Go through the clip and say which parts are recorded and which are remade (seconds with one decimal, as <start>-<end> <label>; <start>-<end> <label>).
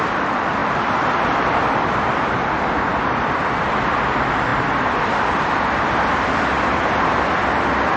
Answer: 0.0-0.6 recorded; 0.6-3.6 remade; 3.6-4.5 recorded; 4.5-6.0 remade; 6.0-8.0 recorded